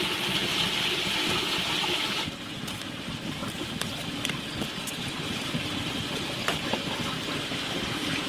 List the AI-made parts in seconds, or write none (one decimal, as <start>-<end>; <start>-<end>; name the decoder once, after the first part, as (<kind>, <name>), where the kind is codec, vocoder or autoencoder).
0.0-0.5 (vocoder, BigVGAN v2); 1.3-3.4; 5.2-8.3